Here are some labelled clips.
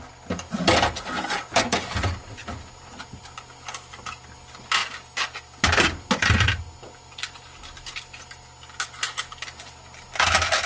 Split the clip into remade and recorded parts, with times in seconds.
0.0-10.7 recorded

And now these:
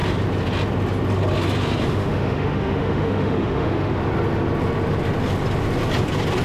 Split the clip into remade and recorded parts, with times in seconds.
0.0-1.9 recorded; 1.9-3.9 remade; 3.9-6.4 recorded